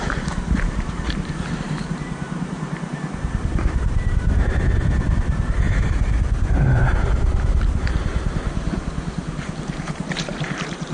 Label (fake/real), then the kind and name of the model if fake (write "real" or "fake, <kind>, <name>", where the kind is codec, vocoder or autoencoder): fake, vocoder, BigVGAN v2